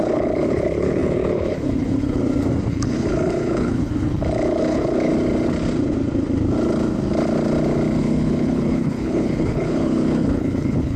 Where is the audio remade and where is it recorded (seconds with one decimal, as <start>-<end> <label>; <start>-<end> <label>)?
0.0-2.2 remade; 2.2-2.7 recorded; 2.7-5.1 remade; 5.1-8.0 recorded; 8.0-11.0 remade